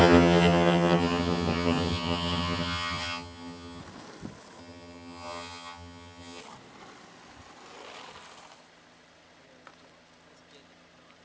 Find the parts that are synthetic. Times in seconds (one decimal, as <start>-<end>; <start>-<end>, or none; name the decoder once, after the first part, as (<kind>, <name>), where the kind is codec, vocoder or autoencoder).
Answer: 0.0-3.8 (vocoder, HiFi-GAN); 4.6-6.4